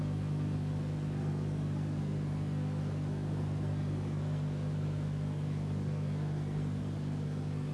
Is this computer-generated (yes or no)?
yes